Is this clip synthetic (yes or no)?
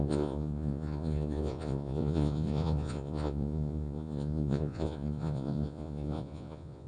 yes